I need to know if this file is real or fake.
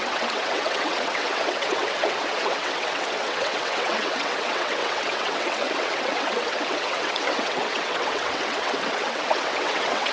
fake